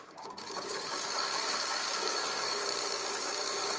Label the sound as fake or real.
fake